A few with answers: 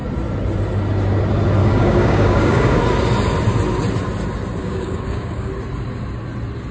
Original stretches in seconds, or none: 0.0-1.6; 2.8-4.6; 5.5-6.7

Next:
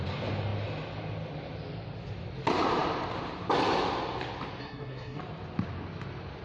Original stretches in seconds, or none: 0.0-4.6; 5.2-6.4

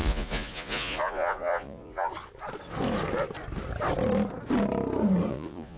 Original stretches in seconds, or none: 2.1-5.3

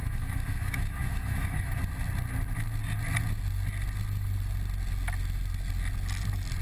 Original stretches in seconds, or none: 1.8-6.6